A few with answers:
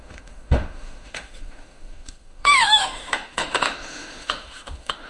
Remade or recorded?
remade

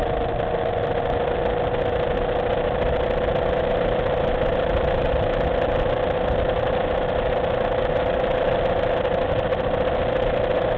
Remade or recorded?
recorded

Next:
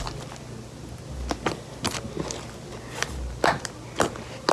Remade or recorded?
recorded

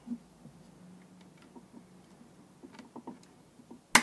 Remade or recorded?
recorded